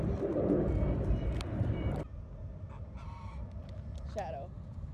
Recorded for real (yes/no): yes